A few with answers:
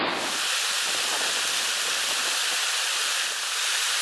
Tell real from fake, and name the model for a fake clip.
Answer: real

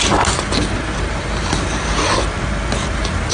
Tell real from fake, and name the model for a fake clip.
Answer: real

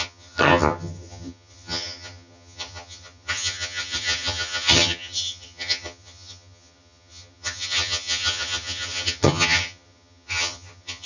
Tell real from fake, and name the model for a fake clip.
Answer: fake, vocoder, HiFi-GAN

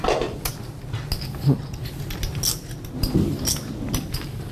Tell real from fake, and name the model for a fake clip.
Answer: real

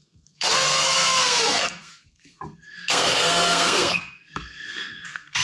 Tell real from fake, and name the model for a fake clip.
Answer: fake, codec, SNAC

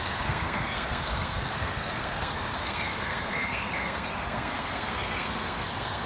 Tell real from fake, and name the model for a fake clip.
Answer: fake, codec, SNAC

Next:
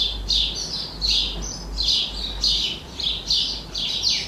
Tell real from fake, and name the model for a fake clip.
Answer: real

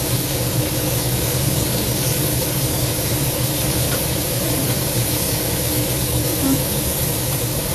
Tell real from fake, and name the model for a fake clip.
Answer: fake, codec, DAC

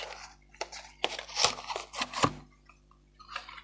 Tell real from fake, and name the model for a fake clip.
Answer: fake, vocoder, BigVGAN v2